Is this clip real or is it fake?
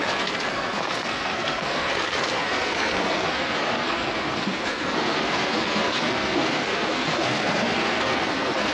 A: fake